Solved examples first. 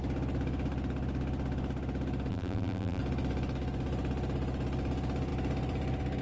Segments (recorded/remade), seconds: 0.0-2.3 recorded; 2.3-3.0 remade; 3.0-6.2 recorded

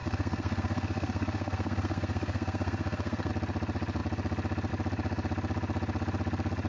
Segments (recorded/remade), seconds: 0.0-3.3 remade; 3.3-6.7 recorded

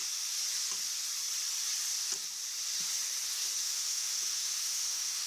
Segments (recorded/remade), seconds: 0.0-3.6 recorded; 3.6-5.3 remade

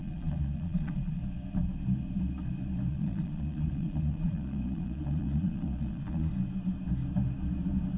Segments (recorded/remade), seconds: 0.0-1.2 remade; 1.2-2.9 recorded; 2.9-6.3 remade; 6.3-8.0 recorded

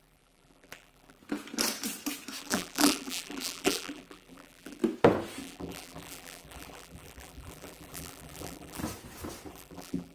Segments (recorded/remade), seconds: 0.0-1.2 remade; 1.2-2.4 recorded; 2.4-4.8 remade; 4.8-5.4 recorded; 5.4-8.8 remade; 8.8-9.5 recorded; 9.5-10.1 remade

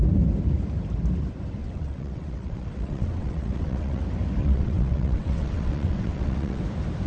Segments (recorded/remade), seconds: 0.0-1.6 recorded; 1.6-4.0 remade; 4.0-4.4 recorded; 4.4-6.6 remade; 6.6-7.1 recorded